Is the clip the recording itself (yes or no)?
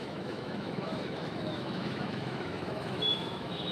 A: no